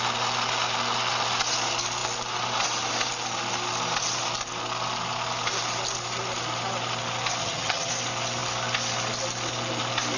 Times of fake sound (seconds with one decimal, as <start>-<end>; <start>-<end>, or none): 7.4-7.9